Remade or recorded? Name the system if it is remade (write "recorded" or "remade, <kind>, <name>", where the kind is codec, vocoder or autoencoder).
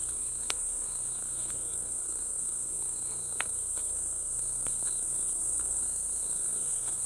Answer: remade, codec, SNAC